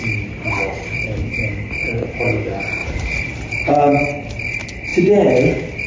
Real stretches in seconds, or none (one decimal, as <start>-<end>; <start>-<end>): 0.0-2.8; 3.7-5.9

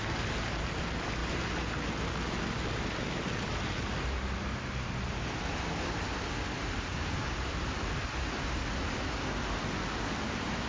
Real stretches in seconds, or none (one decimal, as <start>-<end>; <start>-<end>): 0.0-10.7

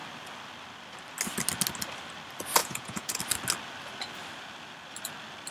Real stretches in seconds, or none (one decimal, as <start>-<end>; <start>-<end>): 0.0-2.6; 3.2-5.5

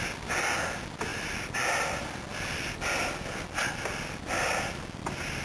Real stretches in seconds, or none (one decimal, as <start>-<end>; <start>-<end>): 0.0-5.4

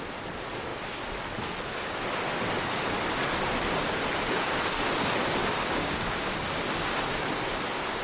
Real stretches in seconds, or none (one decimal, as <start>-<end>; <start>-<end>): 0.0-5.4; 7.0-8.0

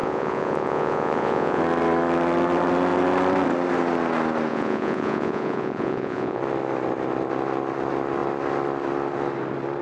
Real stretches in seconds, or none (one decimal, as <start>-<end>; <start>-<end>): 1.6-4.5; 6.4-9.8